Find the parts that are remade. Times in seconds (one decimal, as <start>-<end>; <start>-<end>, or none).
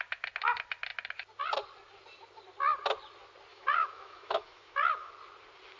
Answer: 3.5-5.1